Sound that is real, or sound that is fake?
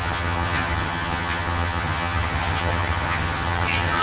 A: fake